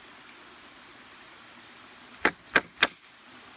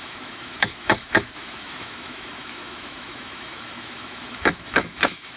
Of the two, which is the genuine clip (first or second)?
first